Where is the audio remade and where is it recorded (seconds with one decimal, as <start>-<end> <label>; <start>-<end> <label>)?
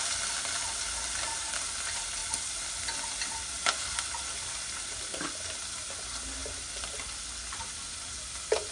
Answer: 0.0-8.7 recorded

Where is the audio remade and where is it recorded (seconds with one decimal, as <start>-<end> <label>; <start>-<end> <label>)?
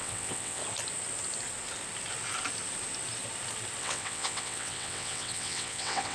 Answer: 0.0-0.6 remade; 0.6-3.8 recorded; 3.8-6.1 remade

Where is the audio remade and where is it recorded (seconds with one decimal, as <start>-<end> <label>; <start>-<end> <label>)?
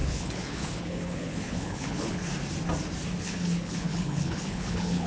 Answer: 0.0-2.2 remade; 2.2-3.2 recorded; 3.2-5.1 remade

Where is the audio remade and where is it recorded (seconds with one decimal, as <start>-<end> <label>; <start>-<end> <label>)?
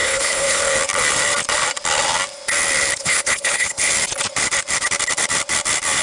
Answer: 0.0-0.6 remade; 0.6-3.0 recorded; 3.0-3.9 remade; 3.9-6.0 recorded